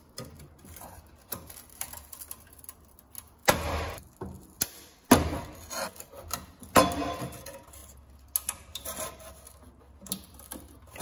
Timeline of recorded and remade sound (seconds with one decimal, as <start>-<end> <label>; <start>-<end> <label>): 0.0-3.4 recorded; 3.4-4.2 remade; 4.2-11.0 recorded